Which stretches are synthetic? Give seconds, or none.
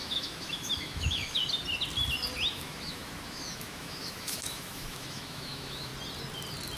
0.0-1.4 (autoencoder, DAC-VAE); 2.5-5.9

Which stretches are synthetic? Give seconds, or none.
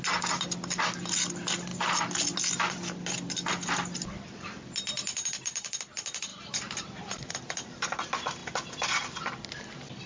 6.3-7.3 (vocoder, BigVGAN v2)